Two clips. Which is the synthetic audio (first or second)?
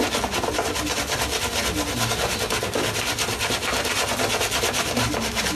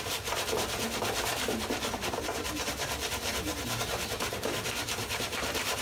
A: second